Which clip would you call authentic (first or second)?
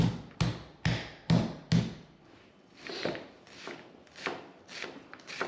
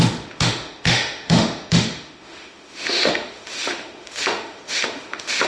first